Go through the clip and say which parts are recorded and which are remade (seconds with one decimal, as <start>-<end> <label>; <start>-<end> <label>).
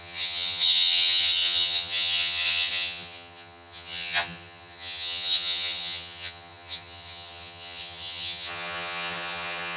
0.0-9.8 remade